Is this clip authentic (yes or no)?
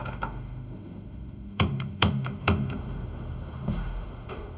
no